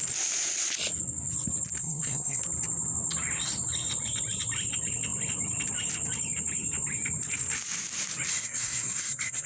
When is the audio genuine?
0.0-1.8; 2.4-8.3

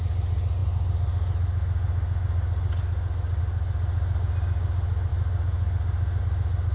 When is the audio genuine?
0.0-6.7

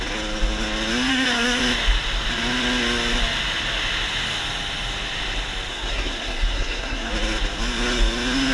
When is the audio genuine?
0.0-1.1; 1.6-5.7; 7.1-8.5